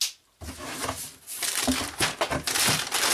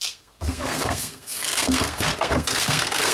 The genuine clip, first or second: first